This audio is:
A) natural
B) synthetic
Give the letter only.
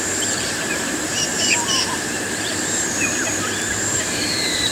B